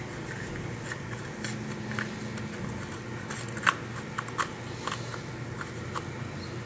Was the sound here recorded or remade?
recorded